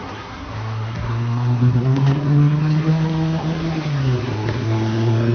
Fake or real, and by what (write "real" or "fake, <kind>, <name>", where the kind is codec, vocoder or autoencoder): fake, codec, SNAC